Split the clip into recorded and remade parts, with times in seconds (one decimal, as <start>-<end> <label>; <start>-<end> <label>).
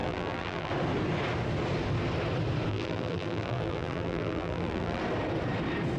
0.0-0.7 remade; 0.7-2.7 recorded; 2.7-5.0 remade; 5.0-6.0 recorded